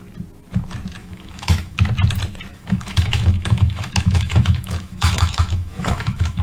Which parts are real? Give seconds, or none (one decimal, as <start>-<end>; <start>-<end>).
0.0-1.0; 1.8-2.5